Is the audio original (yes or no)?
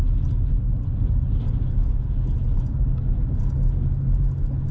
yes